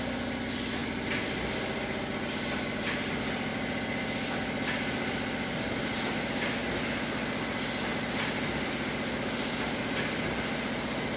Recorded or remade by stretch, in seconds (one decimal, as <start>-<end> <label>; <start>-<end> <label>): 0.0-0.8 recorded; 0.8-2.8 remade; 2.8-3.5 recorded; 3.5-5.7 remade; 5.7-7.9 recorded; 7.9-8.7 remade; 8.7-11.2 recorded